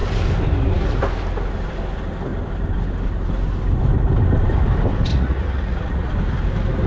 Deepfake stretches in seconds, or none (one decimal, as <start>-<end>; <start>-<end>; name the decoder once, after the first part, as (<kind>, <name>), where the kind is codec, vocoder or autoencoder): 5.1-6.1 (vocoder, Vocos)